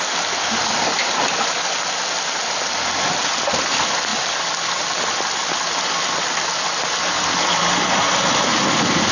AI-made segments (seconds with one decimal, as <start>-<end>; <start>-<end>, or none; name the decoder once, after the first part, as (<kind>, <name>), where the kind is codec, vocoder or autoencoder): none